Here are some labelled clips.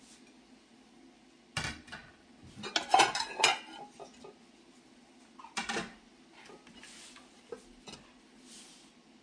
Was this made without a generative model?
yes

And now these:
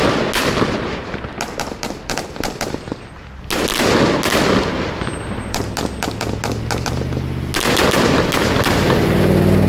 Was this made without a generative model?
yes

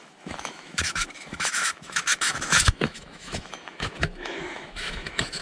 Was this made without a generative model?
no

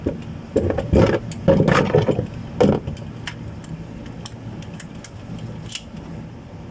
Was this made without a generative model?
yes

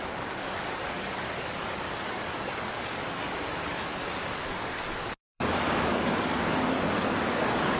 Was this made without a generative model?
no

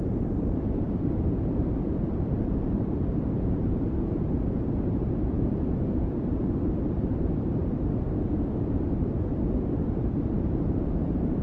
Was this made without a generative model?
no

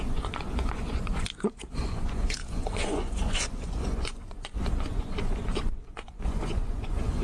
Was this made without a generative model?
no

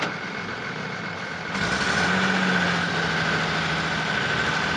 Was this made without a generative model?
yes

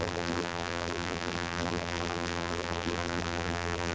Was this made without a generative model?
no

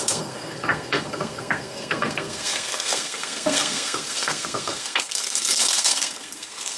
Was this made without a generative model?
no